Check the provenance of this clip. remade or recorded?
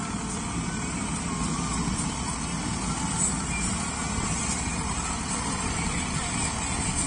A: recorded